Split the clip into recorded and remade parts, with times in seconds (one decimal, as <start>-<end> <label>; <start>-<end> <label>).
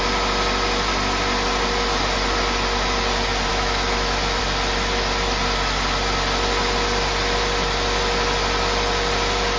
0.0-3.5 recorded; 3.5-4.4 remade; 4.4-9.6 recorded